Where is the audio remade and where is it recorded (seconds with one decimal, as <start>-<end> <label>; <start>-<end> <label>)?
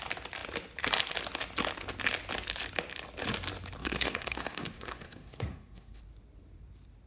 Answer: 0.0-3.8 recorded; 3.8-6.0 remade; 6.0-7.1 recorded